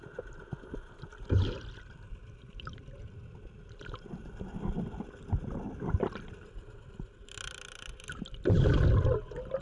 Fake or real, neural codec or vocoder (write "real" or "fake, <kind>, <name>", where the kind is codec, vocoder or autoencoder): real